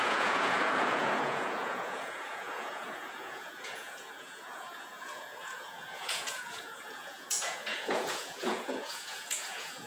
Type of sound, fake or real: fake